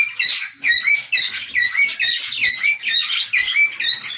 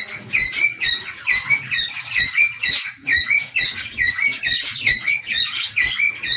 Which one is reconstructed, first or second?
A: second